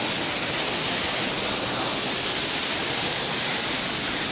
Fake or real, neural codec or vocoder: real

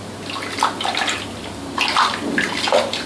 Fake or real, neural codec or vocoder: real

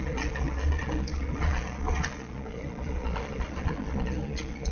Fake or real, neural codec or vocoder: fake, vocoder, Vocos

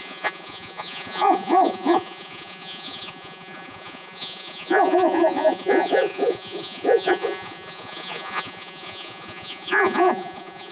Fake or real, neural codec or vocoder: fake, vocoder, Vocos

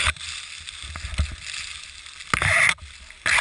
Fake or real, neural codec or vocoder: real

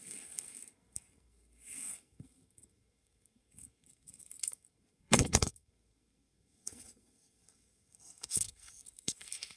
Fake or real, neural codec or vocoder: fake, codec, SNAC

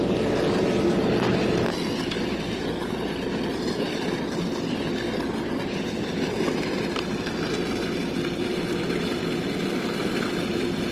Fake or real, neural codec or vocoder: real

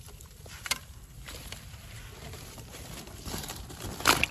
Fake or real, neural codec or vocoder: fake, vocoder, BigVGAN v2